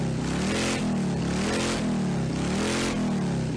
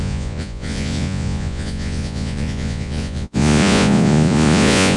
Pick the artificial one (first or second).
second